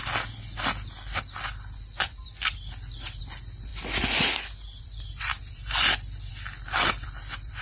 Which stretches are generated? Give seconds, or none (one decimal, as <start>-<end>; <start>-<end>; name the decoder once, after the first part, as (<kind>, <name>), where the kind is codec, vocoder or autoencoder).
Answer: 3.2-3.7 (vocoder, BigVGAN v2); 4.8-7.6